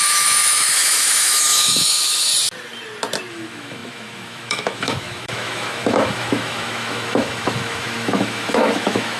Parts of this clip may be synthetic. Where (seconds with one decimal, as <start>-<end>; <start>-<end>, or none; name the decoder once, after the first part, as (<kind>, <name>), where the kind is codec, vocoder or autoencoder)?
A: 0.0-2.3 (autoencoder, DAC-VAE); 3.3-9.2